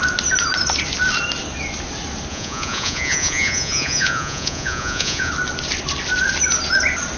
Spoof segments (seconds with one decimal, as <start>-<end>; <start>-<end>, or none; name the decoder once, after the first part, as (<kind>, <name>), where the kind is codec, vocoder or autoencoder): 2.3-5.3 (vocoder, Vocos)